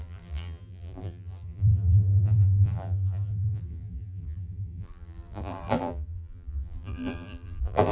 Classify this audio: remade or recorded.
remade